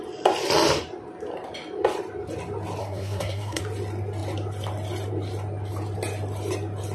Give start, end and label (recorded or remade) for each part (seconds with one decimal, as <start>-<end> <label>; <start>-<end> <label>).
0.0-2.8 recorded; 2.8-3.6 remade; 3.6-6.9 recorded

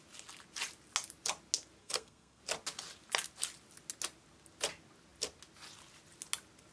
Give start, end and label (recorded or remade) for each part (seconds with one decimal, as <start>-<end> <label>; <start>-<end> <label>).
0.0-1.8 recorded; 1.8-2.4 remade; 2.4-6.7 recorded

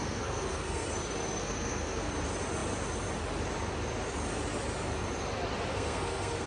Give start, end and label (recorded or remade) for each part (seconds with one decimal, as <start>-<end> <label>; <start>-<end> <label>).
0.0-0.9 remade; 0.9-1.4 recorded; 1.4-2.1 remade; 2.1-5.7 recorded; 5.7-6.5 remade